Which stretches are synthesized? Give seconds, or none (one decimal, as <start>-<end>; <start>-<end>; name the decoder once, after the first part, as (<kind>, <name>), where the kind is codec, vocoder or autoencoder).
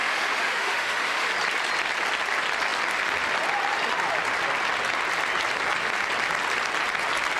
0.0-1.3 (autoencoder, DAC-VAE)